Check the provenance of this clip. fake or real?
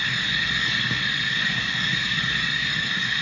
fake